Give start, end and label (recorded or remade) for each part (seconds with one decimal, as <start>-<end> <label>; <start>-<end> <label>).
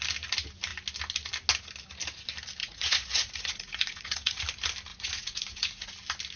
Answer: 0.0-2.6 recorded; 2.6-4.4 remade; 4.4-4.9 recorded; 4.9-5.9 remade; 5.9-6.4 recorded